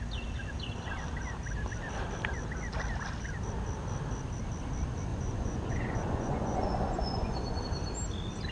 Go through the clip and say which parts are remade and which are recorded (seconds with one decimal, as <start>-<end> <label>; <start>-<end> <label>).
0.0-5.1 recorded; 5.1-7.6 remade; 7.6-8.5 recorded